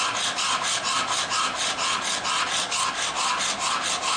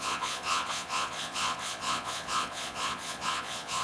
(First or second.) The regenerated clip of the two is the second